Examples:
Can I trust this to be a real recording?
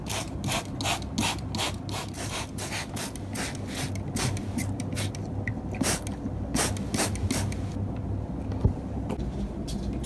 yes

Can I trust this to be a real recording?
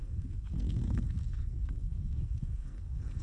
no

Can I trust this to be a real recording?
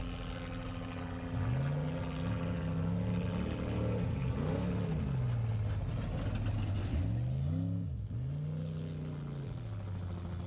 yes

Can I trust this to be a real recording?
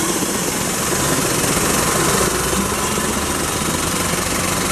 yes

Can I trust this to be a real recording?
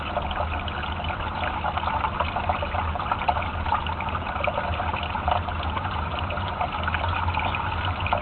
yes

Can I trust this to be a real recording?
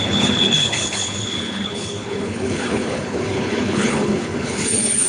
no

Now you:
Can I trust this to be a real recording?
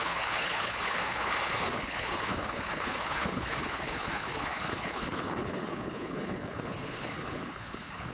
no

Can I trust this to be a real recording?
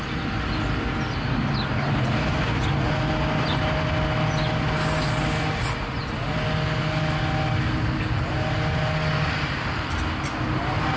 yes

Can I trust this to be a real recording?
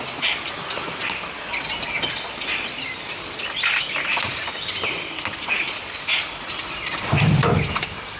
no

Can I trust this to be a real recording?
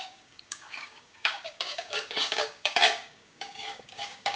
no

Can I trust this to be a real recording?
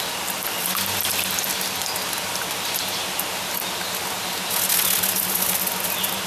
yes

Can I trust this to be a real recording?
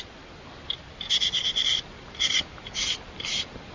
yes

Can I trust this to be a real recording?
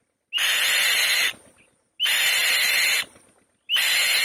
yes